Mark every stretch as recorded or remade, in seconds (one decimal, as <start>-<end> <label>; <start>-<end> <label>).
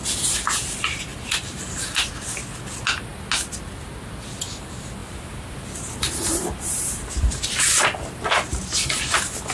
0.0-1.1 recorded; 1.1-2.1 remade; 2.1-5.0 recorded; 5.0-7.6 remade; 7.6-9.5 recorded